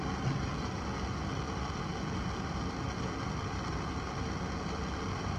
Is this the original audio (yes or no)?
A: yes